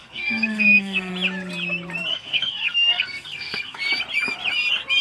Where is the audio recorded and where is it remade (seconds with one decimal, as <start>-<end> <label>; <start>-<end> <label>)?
0.0-1.1 remade; 1.1-2.1 recorded; 2.1-3.8 remade; 3.8-5.0 recorded